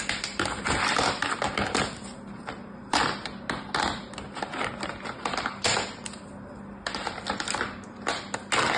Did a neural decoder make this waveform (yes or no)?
no